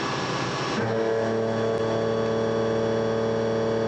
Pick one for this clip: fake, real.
real